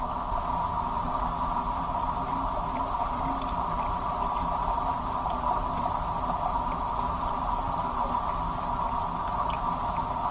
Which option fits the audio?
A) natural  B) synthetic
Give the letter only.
A